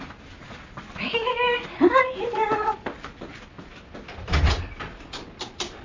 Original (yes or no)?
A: yes